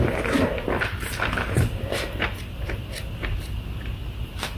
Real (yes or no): yes